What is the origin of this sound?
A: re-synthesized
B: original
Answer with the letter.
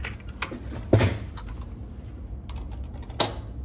B